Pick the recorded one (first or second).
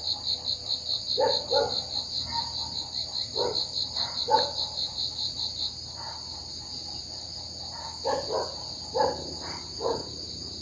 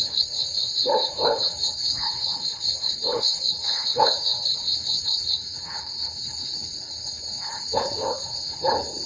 first